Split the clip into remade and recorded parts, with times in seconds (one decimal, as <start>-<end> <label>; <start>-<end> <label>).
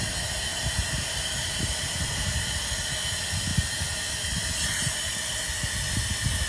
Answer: 0.0-0.5 recorded; 0.5-2.6 remade; 2.6-6.5 recorded